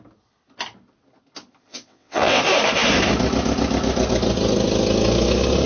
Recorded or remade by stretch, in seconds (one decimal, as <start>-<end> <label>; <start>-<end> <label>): 0.0-1.7 recorded; 1.7-2.4 remade; 2.4-5.7 recorded